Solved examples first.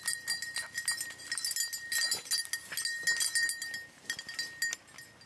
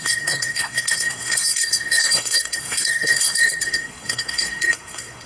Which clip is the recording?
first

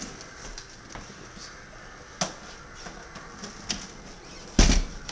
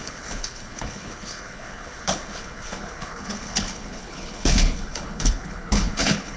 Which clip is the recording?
first